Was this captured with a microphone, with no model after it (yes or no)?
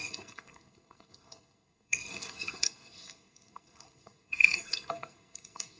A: no